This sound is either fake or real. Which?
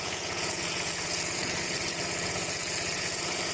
fake